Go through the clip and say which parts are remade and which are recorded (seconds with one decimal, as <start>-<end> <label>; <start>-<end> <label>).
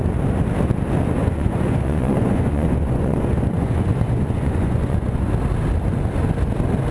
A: 0.0-1.2 recorded; 1.2-5.3 remade; 5.3-6.9 recorded